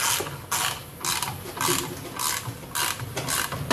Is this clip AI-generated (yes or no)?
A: no